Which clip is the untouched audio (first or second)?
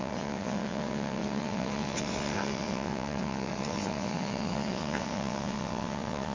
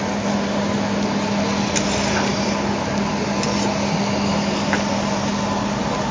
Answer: second